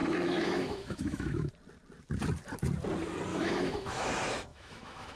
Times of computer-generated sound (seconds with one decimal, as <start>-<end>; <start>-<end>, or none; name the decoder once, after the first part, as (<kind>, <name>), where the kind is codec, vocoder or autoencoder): 0.0-1.5 (autoencoder, DAC-VAE); 3.3-4.1; 4.5-5.2

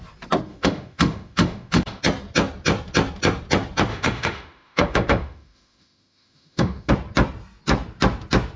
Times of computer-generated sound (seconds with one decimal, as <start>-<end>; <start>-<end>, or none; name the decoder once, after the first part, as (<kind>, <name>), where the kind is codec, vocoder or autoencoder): 0.5-2.0 (autoencoder, DAC-VAE); 3.9-6.9

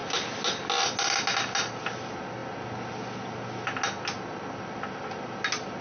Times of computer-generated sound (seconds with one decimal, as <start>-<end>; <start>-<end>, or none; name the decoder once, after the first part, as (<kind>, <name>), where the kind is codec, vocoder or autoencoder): none

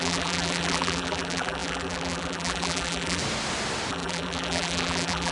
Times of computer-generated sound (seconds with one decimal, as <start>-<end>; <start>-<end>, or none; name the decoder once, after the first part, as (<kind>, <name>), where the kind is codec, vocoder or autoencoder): 0.0-3.2 (vocoder, BigVGAN v2); 3.9-5.3

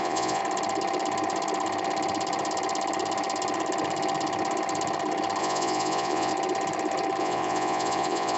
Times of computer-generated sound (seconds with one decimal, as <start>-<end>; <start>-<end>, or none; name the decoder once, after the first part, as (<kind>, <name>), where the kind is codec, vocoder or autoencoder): 0.0-0.4 (vocoder, Vocos); 5.4-6.3; 7.2-8.4

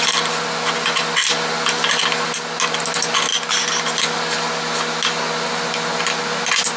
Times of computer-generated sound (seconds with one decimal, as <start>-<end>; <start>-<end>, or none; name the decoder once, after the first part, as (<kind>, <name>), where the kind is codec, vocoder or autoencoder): none

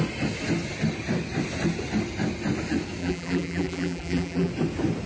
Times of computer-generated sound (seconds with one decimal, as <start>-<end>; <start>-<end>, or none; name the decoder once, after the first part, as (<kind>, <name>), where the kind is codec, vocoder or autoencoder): 3.0-4.5 (vocoder, BigVGAN v2)